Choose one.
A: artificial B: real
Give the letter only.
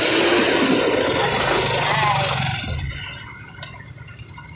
B